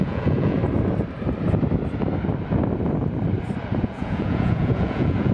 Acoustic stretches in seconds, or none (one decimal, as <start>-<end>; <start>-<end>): 0.6-3.8